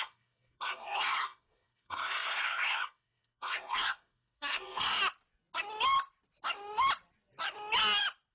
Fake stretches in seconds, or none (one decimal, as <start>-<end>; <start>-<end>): 0.0-5.0